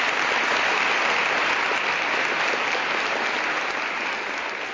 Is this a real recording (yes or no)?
yes